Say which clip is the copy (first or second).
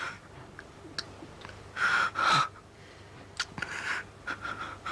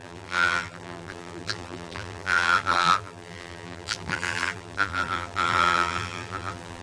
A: second